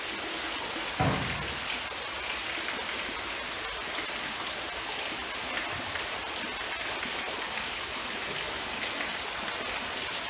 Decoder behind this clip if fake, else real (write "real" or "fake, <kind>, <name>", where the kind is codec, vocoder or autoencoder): real